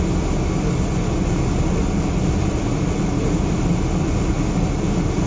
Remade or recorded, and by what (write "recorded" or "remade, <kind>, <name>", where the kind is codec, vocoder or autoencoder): recorded